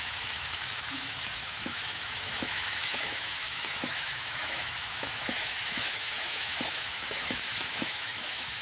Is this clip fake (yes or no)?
yes